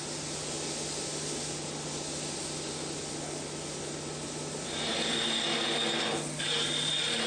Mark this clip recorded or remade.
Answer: recorded